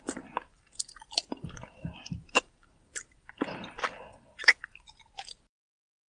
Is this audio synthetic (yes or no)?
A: yes